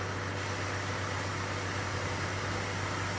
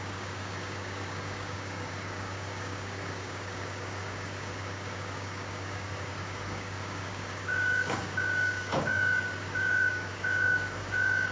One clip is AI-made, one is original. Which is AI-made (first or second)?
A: second